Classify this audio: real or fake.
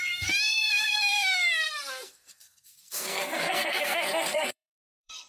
fake